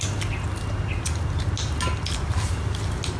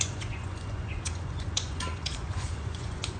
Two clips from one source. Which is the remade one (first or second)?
second